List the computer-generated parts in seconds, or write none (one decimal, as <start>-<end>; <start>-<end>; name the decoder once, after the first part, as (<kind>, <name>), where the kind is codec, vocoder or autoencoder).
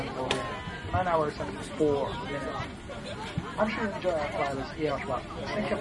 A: none